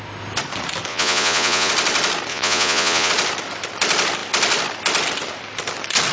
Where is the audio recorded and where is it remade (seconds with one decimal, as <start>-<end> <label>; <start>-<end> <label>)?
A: 0.0-0.9 recorded; 0.9-1.7 remade; 1.7-2.3 recorded; 2.3-3.1 remade; 3.1-6.1 recorded